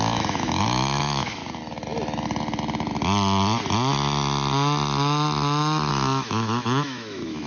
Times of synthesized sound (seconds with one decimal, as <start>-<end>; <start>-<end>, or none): 0.0-1.4; 5.9-7.5